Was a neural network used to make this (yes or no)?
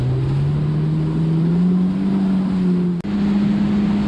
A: no